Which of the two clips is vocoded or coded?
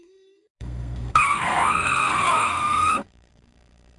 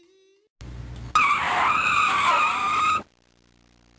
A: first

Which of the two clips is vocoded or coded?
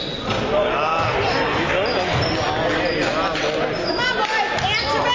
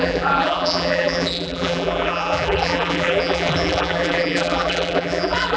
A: second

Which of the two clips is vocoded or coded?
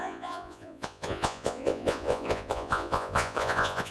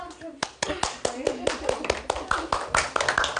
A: first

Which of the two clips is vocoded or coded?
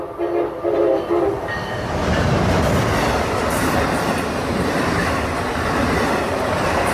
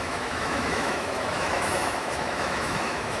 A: second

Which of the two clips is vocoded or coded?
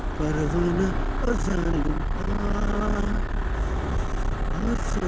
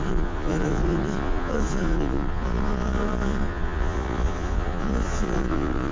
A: second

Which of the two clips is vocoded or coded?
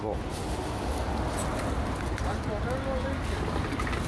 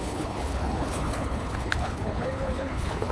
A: second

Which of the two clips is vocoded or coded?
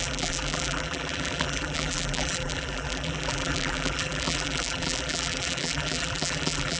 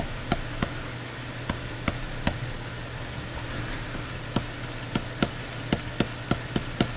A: first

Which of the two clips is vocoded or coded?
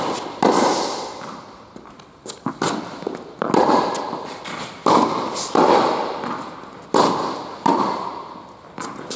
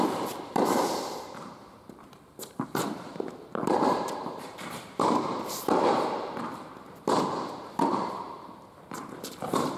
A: second